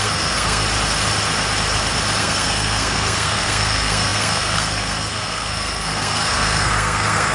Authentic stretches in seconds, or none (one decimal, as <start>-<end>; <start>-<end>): 0.6-2.2